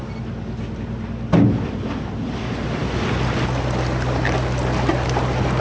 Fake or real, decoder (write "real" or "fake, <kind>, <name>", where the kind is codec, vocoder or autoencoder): real